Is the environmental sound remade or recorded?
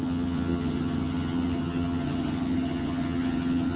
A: remade